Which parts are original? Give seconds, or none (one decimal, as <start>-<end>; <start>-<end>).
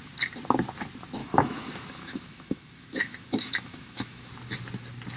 0.0-1.2; 4.3-5.2